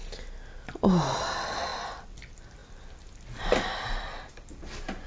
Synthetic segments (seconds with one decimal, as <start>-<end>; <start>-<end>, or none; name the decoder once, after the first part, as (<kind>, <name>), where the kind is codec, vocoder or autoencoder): none